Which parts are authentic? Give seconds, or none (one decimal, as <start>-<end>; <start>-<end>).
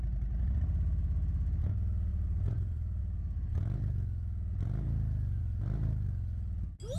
0.0-2.1; 3.0-7.0